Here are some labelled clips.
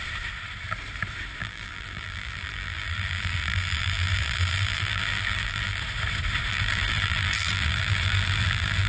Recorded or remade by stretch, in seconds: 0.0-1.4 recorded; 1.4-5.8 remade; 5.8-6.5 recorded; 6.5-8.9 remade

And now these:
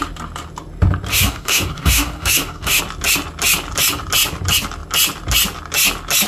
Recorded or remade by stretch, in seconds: 0.0-1.1 recorded; 1.1-2.8 remade; 2.8-6.3 recorded

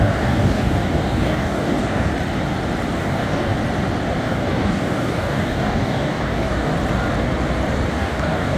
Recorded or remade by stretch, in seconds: 0.0-2.1 remade; 2.1-3.0 recorded; 3.0-3.5 remade; 3.5-4.2 recorded; 4.2-6.7 remade; 6.7-7.9 recorded; 7.9-8.6 remade